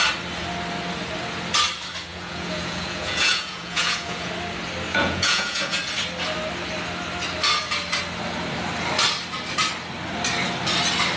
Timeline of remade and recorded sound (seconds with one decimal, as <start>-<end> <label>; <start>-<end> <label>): 0.0-2.1 recorded; 2.1-4.3 remade; 4.3-4.9 recorded; 4.9-5.8 remade; 5.8-11.2 recorded